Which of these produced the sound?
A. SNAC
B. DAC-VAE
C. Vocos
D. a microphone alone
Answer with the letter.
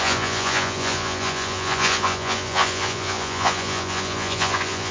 C